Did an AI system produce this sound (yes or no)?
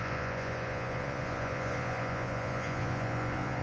yes